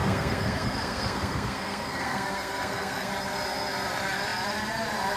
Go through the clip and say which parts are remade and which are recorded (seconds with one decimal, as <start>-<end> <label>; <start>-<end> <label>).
0.0-3.1 remade; 3.1-5.2 recorded